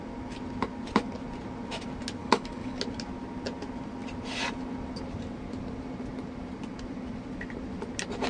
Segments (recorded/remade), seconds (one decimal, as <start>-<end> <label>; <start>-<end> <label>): 0.0-2.2 recorded; 2.2-2.8 remade; 2.8-8.3 recorded